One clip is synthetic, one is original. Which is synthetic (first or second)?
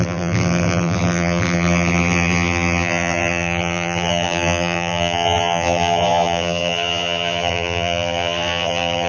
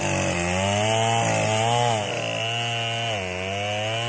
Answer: first